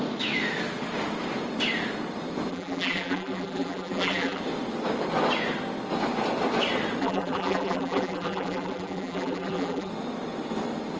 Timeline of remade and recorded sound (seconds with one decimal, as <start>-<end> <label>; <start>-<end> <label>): 0.0-2.5 recorded; 2.5-4.4 remade; 4.4-7.0 recorded; 7.0-9.9 remade; 9.9-11.0 recorded

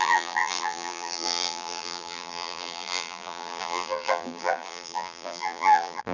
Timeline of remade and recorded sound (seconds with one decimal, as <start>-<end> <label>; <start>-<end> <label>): 0.0-6.1 remade

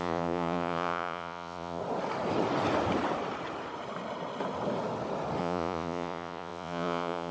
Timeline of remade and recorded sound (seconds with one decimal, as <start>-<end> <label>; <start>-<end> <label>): 0.0-1.8 remade; 1.8-5.4 recorded; 5.4-7.3 remade

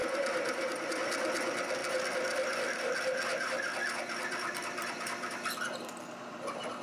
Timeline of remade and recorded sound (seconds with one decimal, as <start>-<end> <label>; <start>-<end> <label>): 0.0-0.9 remade; 0.9-1.8 recorded; 1.8-5.9 remade; 5.9-6.8 recorded

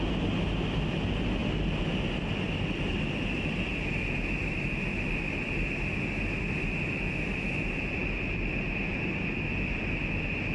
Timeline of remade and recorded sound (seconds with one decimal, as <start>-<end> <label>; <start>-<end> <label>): 0.0-10.5 recorded